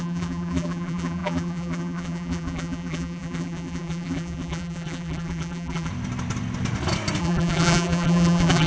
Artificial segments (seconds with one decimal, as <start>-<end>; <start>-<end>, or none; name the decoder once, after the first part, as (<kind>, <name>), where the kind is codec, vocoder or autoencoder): 0.0-5.9 (vocoder, BigVGAN v2); 7.2-8.7